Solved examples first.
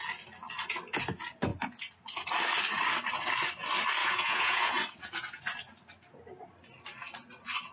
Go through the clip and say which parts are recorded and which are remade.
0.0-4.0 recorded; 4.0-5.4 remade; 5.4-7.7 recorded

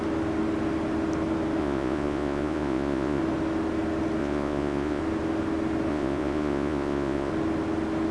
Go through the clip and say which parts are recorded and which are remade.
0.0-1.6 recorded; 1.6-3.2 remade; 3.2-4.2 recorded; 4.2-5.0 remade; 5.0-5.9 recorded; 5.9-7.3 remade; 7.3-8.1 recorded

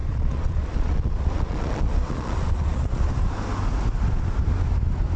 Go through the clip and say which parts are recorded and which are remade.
0.0-3.1 remade; 3.1-5.2 recorded

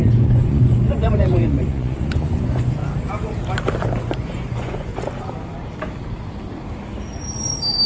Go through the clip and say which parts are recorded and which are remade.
0.0-2.8 remade; 2.8-3.8 recorded; 3.8-4.9 remade; 4.9-7.9 recorded

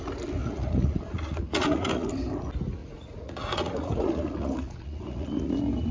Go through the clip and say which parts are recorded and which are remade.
0.0-0.4 recorded; 0.4-2.1 remade; 2.1-2.8 recorded; 2.8-5.5 remade; 5.5-5.9 recorded

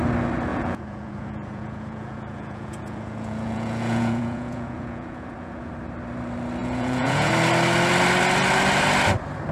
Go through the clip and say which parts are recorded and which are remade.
0.0-0.5 recorded; 0.5-5.7 remade; 5.7-6.6 recorded; 6.6-7.3 remade; 7.3-9.5 recorded

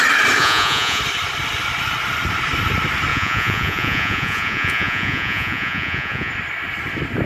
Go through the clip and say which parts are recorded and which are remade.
0.0-0.4 recorded; 0.4-1.0 remade; 1.0-3.1 recorded; 3.1-6.3 remade; 6.3-7.3 recorded